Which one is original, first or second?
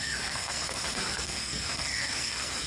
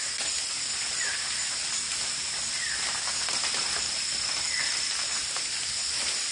second